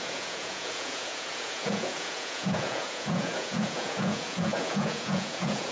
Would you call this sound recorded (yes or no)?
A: no